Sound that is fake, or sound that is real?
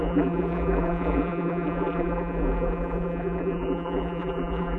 fake